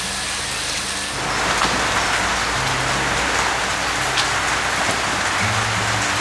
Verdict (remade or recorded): recorded